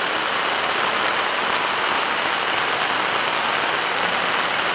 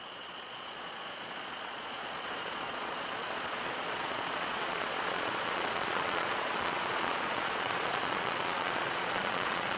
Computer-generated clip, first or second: second